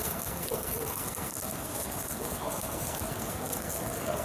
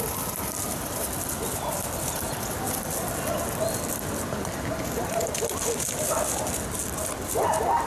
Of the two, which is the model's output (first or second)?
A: first